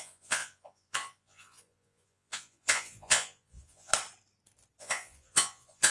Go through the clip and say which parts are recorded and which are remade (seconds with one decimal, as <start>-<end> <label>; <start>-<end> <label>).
0.0-3.9 remade; 3.9-4.8 recorded; 4.8-5.9 remade